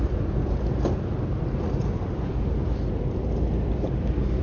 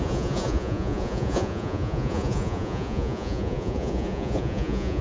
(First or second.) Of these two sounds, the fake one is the second